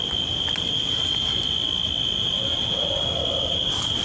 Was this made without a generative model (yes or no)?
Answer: no